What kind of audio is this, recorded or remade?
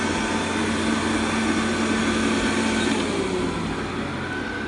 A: recorded